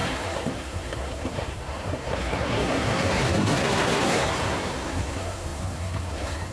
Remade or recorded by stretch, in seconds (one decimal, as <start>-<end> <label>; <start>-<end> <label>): 0.0-6.5 remade